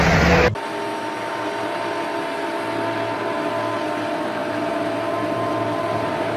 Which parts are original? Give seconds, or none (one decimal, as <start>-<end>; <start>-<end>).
0.0-5.9